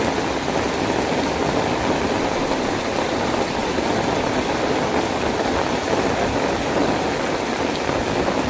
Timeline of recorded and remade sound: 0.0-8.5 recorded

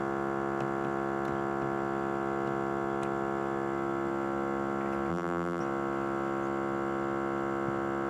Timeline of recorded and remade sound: 0.0-5.1 recorded; 5.1-5.6 remade; 5.6-8.1 recorded

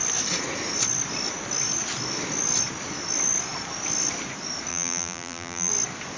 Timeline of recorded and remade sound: 0.0-4.7 recorded; 4.7-5.7 remade; 5.7-6.2 recorded

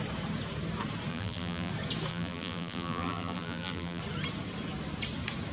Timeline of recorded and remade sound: 0.0-1.1 recorded; 1.1-1.7 remade; 1.7-2.1 recorded; 2.1-4.0 remade; 4.0-5.5 recorded